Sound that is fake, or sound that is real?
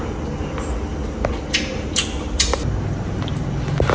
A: real